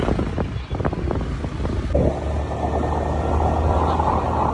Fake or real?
real